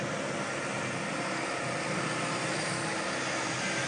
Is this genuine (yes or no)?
yes